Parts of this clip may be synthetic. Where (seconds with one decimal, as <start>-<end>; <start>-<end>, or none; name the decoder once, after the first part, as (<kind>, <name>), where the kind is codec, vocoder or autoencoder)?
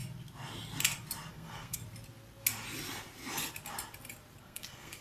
1.3-1.8 (codec, SNAC); 4.4-5.0